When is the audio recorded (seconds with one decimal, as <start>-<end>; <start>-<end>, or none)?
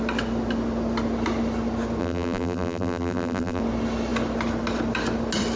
0.0-2.0; 3.6-5.6